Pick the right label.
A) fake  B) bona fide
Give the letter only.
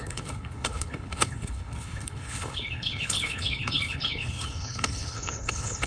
A